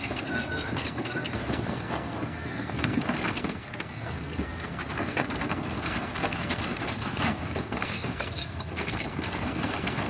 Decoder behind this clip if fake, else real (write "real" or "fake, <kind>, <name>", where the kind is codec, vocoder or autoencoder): fake, codec, SNAC